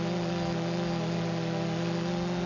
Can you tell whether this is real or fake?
real